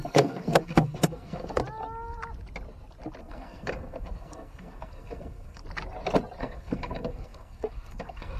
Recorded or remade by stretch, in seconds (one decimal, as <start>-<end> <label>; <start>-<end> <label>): 0.0-1.6 remade; 1.6-3.2 recorded; 3.2-5.6 remade; 5.6-6.4 recorded; 6.4-8.4 remade